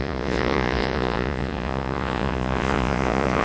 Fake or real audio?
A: fake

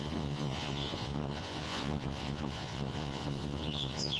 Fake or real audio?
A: fake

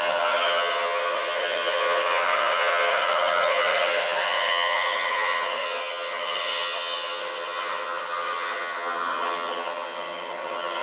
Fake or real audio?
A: fake